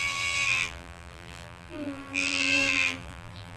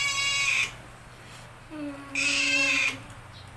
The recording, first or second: second